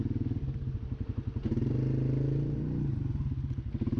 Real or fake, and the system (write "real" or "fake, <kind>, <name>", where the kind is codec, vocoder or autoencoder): real